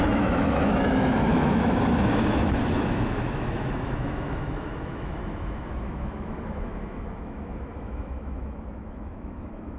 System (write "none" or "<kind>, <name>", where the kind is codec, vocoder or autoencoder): autoencoder, DAC-VAE